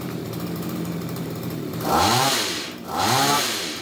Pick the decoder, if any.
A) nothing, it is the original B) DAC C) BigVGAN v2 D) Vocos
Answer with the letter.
C